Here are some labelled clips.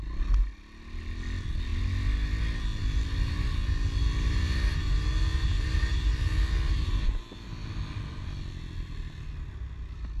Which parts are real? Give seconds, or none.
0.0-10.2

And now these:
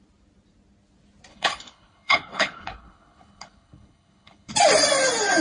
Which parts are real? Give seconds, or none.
0.0-1.3; 4.5-5.4

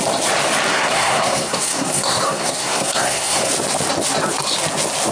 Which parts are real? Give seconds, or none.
0.0-0.7; 3.5-5.1

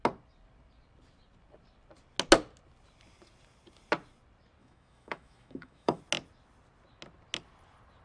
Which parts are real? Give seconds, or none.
0.0-4.6; 6.0-8.0

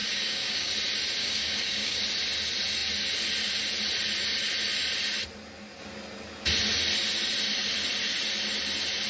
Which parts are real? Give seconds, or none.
0.7-1.2; 2.0-9.1

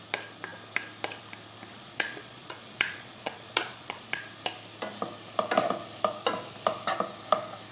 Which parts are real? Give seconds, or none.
0.0-1.7; 4.2-7.7

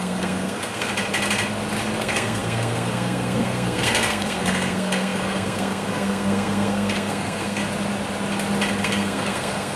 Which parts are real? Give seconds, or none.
0.9-2.0; 7.6-8.8